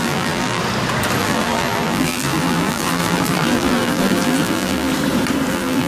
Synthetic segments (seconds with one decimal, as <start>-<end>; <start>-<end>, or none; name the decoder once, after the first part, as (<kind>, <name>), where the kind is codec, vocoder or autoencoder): 0.0-0.6 (vocoder, BigVGAN v2); 1.2-4.9; 5.5-5.9